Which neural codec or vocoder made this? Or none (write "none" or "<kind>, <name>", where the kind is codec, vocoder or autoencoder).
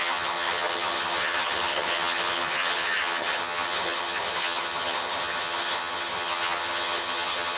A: vocoder, HiFi-GAN